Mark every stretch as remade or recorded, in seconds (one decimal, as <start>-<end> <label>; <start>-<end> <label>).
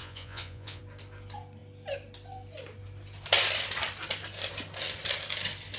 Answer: 0.0-0.8 remade; 0.8-5.8 recorded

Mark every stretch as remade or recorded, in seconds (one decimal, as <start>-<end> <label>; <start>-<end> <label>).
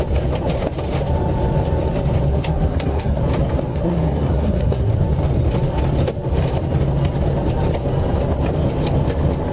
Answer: 0.0-2.3 recorded; 2.3-3.2 remade; 3.2-3.7 recorded; 3.7-4.9 remade; 4.9-9.5 recorded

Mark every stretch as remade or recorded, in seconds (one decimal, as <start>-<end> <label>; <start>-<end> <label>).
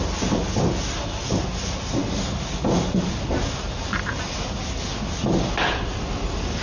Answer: 0.0-6.6 recorded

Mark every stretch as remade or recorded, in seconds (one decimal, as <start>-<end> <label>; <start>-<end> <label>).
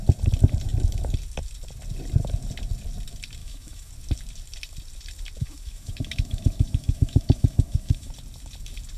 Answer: 0.0-3.4 recorded; 3.4-3.9 remade; 3.9-5.4 recorded; 5.4-8.1 remade; 8.1-9.0 recorded